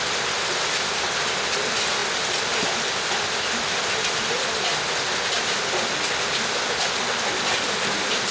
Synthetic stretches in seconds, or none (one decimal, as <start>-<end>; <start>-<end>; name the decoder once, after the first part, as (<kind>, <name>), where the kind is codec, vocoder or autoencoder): none